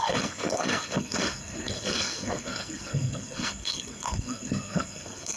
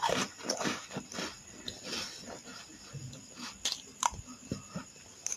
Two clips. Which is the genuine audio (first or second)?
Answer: second